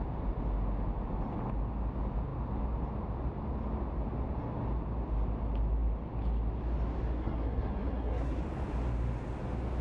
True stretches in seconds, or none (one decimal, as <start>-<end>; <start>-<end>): 0.0-7.2; 8.4-9.8